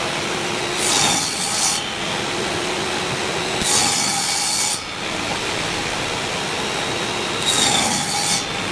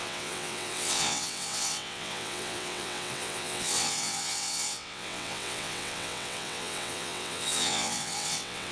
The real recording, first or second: first